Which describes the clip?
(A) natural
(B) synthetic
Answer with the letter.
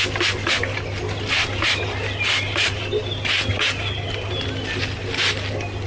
A